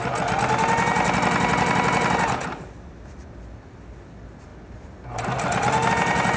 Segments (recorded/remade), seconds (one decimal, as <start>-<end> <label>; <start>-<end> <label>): 0.0-6.4 recorded